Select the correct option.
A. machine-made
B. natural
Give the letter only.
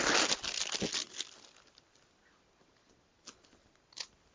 B